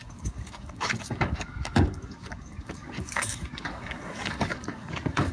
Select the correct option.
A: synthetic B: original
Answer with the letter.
A